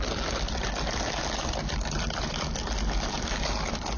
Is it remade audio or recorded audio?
recorded